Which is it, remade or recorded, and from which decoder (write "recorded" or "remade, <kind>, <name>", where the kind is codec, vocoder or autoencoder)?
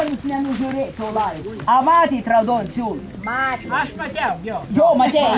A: recorded